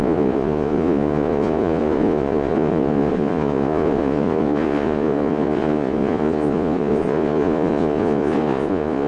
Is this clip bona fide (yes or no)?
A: no